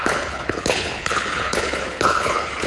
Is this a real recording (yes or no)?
no